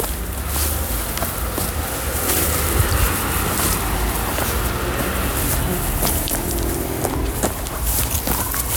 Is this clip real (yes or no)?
yes